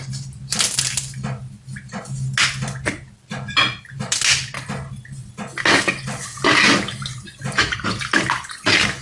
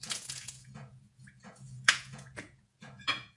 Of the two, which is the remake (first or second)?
second